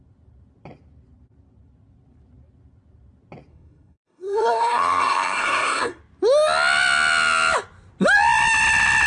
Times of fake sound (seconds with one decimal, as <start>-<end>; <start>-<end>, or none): 3.5-6.0